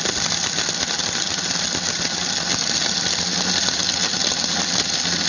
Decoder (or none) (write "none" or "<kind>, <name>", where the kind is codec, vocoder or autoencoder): none